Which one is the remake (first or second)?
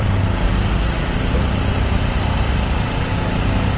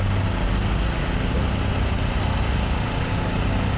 first